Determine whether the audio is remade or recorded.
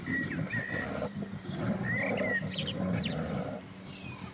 recorded